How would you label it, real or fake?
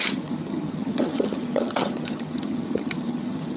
fake